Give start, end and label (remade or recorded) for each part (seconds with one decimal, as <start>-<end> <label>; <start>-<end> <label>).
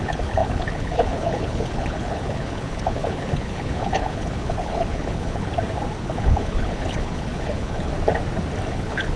0.0-5.5 remade; 5.5-6.0 recorded; 6.0-7.9 remade; 7.9-8.7 recorded; 8.7-9.2 remade